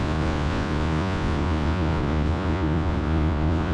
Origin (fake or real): fake